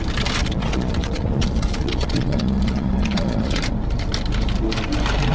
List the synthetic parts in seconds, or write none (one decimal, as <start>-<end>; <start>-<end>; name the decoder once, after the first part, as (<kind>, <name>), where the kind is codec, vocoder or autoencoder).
0.4-3.6 (vocoder, Vocos)